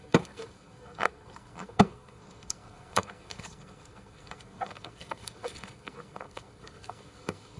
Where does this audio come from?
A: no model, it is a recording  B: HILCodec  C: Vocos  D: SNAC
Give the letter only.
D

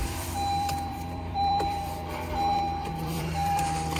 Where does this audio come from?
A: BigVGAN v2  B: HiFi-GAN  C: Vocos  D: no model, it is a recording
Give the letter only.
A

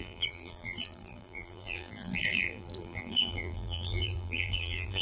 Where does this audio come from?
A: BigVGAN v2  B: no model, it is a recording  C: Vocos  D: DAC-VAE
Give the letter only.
A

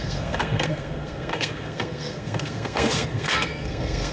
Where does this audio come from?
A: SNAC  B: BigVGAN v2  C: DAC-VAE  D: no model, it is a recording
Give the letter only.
A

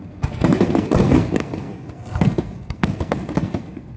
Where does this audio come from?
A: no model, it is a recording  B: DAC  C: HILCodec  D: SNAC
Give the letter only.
D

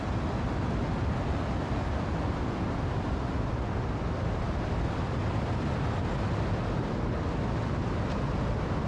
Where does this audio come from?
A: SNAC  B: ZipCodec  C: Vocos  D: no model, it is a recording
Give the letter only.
D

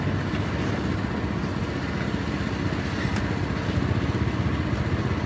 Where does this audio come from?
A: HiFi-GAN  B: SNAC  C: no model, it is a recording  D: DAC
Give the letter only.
C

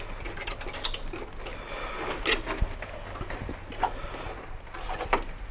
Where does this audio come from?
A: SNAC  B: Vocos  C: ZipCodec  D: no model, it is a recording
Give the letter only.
D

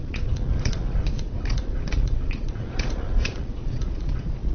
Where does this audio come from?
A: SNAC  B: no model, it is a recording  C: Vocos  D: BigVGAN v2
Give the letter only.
C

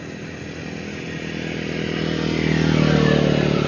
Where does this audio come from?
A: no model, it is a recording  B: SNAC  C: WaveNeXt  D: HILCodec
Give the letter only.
A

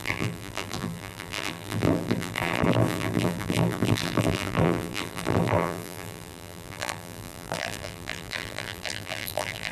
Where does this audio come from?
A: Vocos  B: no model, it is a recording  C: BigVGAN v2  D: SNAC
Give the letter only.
C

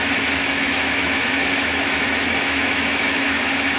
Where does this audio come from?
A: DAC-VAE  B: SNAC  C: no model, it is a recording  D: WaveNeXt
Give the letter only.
A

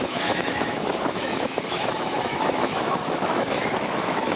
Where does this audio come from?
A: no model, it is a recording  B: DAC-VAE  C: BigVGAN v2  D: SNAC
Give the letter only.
B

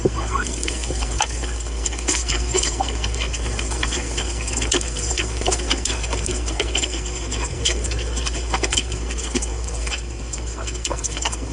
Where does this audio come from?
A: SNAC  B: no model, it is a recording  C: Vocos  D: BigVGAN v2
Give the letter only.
A